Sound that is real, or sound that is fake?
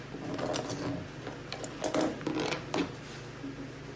real